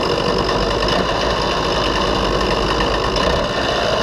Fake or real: real